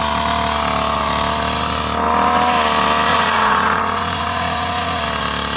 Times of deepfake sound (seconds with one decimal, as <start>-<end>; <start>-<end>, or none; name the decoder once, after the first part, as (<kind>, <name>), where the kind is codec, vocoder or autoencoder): 3.1-5.0 (vocoder, Vocos)